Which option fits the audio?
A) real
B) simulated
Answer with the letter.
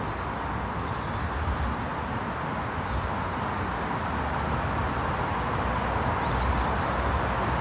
A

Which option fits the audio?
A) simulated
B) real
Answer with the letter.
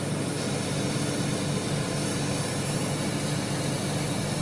B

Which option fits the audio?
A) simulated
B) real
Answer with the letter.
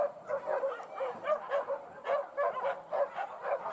B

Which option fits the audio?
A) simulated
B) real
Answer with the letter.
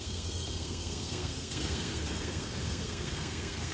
A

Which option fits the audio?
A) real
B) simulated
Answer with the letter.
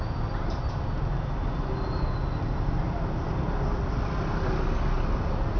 A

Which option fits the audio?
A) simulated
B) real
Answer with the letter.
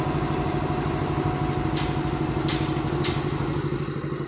B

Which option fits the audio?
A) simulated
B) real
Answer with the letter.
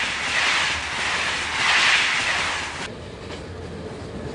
B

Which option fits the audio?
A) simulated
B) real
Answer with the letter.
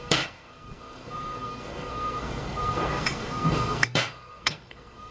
A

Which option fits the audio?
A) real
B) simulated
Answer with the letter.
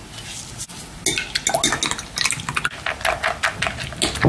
A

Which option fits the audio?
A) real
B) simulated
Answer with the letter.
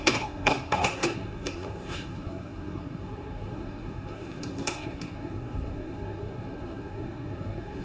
B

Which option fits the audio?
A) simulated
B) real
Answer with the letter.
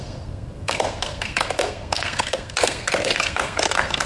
A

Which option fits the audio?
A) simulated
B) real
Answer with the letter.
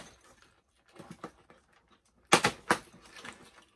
B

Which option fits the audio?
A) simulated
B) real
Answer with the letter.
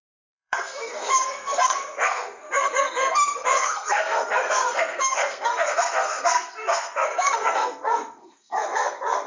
A